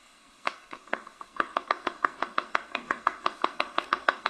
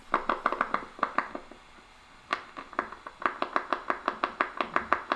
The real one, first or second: second